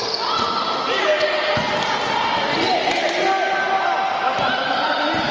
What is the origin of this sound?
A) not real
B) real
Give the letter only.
B